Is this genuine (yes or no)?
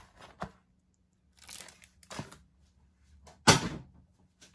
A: yes